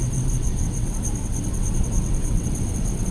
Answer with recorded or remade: remade